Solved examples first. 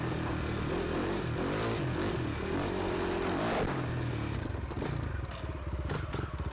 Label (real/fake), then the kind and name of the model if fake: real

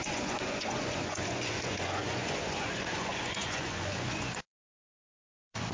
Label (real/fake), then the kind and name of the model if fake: fake, vocoder, Vocos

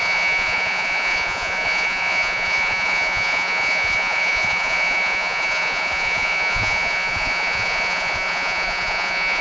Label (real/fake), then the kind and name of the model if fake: fake, vocoder, Vocos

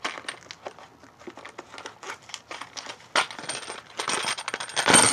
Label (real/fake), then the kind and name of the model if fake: real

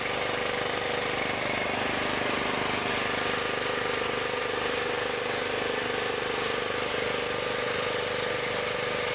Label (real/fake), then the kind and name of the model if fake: real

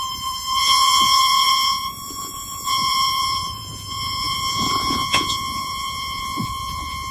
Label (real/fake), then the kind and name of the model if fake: fake, vocoder, Vocos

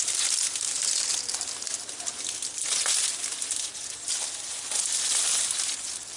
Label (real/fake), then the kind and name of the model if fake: real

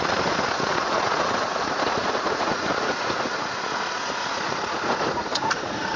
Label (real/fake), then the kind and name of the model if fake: fake, vocoder, Vocos